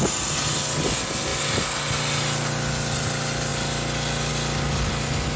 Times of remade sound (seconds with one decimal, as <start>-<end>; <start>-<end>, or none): none